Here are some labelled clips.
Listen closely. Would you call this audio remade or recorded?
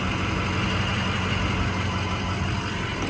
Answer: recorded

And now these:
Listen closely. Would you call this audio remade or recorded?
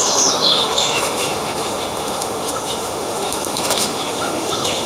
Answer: remade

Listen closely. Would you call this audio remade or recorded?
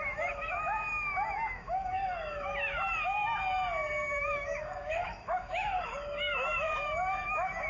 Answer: remade